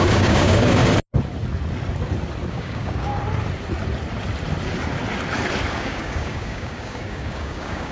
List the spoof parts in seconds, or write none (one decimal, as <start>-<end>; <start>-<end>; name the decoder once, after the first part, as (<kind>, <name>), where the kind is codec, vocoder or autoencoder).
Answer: 0.0-0.8 (codec, DAC); 2.5-3.1; 5.7-7.9